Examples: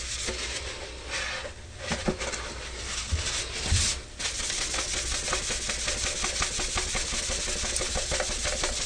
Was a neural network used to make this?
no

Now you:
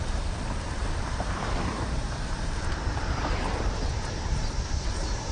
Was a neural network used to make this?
yes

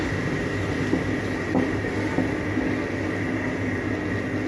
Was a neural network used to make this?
no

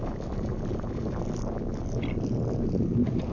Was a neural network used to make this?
no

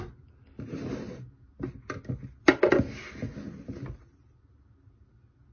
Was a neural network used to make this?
no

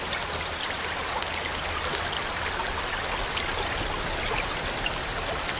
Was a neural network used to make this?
no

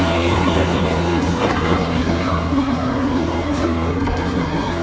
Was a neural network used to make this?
yes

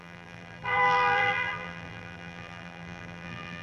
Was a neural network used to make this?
yes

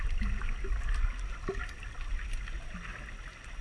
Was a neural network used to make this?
no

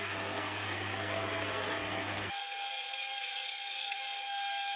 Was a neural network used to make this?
yes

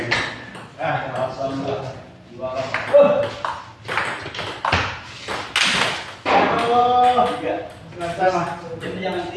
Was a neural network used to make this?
no